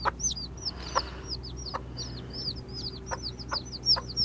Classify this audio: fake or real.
real